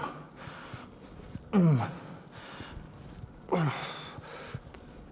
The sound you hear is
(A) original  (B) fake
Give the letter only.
A